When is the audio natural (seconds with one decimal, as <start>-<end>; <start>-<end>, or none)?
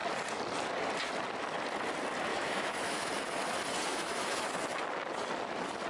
0.0-2.3; 3.1-3.9; 4.5-5.9